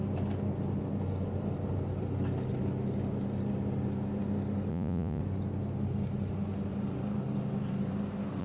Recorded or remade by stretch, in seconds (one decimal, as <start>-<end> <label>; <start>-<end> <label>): 0.0-4.7 recorded; 4.7-5.2 remade; 5.2-8.4 recorded